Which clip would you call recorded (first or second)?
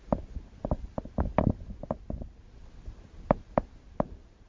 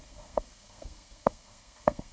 first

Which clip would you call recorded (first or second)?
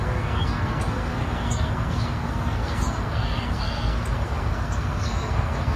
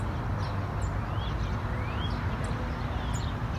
second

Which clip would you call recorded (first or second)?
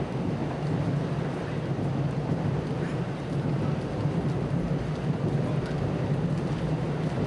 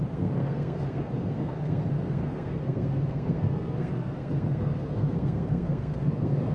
first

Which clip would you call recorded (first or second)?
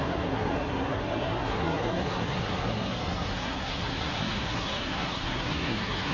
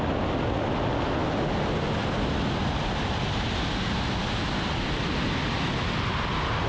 second